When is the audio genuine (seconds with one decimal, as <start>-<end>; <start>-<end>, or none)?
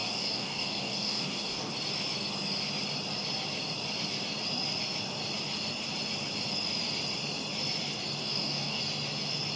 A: 1.7-8.2; 8.8-9.6